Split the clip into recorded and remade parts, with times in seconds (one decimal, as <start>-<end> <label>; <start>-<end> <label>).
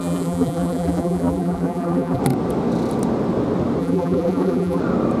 0.0-2.2 remade; 2.2-3.8 recorded; 3.8-4.8 remade; 4.8-5.2 recorded